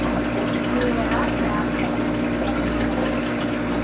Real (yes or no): yes